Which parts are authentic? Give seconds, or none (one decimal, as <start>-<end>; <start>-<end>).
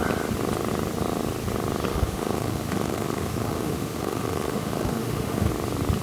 0.0-1.9; 5.5-6.0